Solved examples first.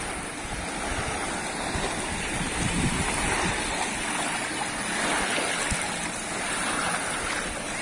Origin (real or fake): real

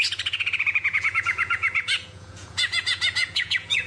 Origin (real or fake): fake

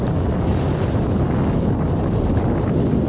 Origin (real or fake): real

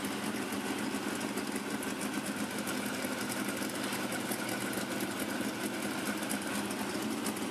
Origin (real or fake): real